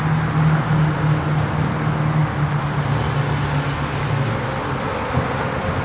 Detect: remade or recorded recorded